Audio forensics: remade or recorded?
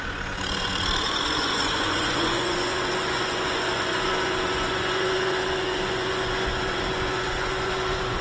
remade